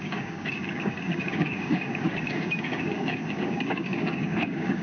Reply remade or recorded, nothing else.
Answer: remade